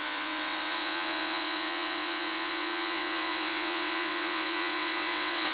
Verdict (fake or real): fake